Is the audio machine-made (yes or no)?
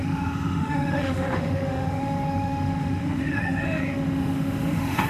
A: yes